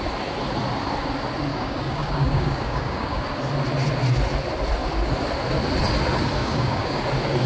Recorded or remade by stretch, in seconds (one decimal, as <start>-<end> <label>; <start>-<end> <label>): 0.0-1.5 recorded; 1.5-3.2 remade; 3.2-6.4 recorded; 6.4-7.0 remade; 7.0-7.5 recorded